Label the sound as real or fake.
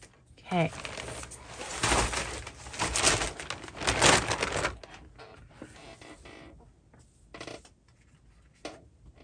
real